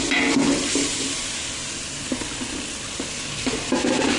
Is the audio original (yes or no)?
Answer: yes